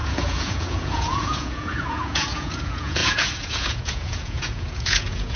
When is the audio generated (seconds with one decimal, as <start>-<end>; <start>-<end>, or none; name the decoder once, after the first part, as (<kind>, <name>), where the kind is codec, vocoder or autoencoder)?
0.0-5.4 (vocoder, Vocos)